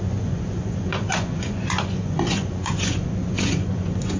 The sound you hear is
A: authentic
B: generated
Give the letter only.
B